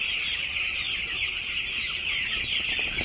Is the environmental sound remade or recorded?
recorded